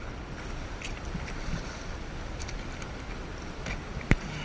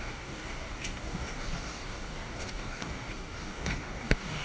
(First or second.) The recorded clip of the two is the first